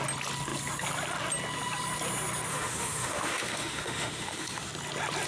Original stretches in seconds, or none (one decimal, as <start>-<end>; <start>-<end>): 0.0-2.5; 4.7-5.3